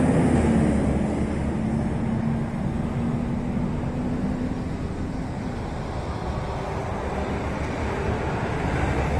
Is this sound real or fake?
real